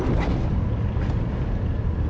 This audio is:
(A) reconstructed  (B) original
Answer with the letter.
B